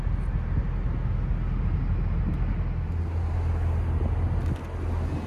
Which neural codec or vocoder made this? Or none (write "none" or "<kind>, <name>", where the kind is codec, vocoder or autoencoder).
none